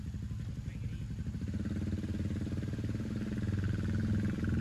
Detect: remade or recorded recorded